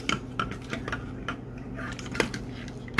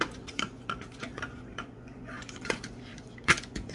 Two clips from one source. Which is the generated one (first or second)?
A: second